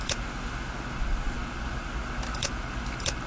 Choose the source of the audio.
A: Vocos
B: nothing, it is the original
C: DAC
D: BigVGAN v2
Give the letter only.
B